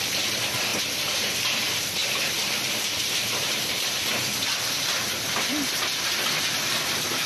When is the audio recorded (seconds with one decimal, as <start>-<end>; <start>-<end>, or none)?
0.0-7.3